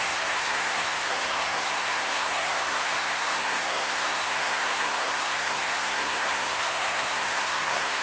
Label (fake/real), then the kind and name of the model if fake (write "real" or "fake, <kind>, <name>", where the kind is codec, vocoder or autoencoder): fake, codec, SNAC